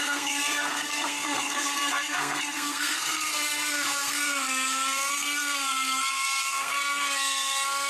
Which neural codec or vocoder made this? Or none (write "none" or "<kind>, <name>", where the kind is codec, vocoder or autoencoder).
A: codec, SNAC